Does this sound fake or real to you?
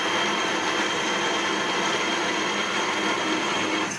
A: real